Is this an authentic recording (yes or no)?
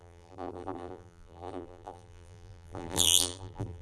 no